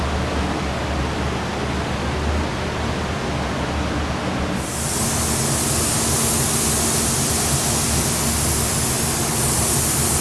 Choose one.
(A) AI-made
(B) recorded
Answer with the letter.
B